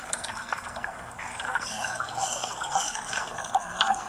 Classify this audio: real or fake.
fake